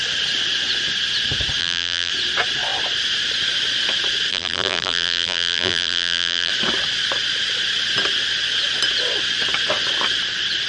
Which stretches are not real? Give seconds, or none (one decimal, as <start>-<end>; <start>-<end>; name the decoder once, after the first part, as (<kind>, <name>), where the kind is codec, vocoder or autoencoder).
1.6-2.1 (vocoder, BigVGAN v2); 4.3-6.5

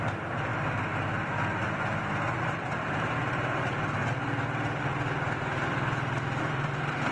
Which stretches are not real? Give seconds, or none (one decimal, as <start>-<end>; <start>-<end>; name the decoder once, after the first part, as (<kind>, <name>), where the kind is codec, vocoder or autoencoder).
0.0-0.5 (vocoder, BigVGAN v2); 2.4-4.0; 6.4-7.1

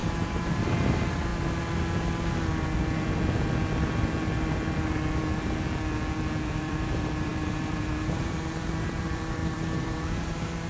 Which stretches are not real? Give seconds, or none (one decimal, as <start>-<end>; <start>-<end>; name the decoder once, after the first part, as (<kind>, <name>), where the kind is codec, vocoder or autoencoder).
0.0-1.3 (vocoder, BigVGAN v2); 6.5-10.7

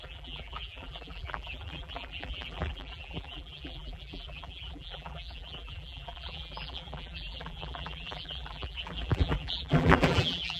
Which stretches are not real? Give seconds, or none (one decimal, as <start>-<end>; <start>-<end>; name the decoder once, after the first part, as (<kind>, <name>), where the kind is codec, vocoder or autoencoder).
0.0-10.6 (vocoder, BigVGAN v2)

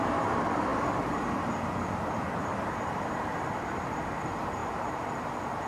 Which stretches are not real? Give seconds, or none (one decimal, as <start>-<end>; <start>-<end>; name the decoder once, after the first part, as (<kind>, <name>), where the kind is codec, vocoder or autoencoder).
0.0-5.7 (vocoder, BigVGAN v2)

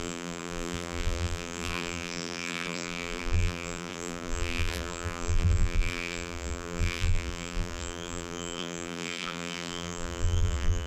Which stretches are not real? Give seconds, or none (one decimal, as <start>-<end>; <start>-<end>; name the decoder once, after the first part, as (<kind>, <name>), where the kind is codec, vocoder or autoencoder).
0.0-10.9 (vocoder, BigVGAN v2)

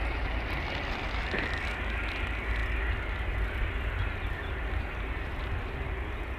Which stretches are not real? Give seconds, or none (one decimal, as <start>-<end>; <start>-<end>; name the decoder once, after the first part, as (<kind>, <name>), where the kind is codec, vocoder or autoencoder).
none

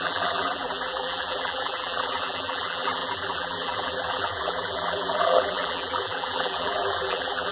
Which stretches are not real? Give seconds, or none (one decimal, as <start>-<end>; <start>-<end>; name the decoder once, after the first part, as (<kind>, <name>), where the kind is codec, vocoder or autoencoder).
0.0-7.5 (vocoder, BigVGAN v2)